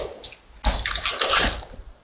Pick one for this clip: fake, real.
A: real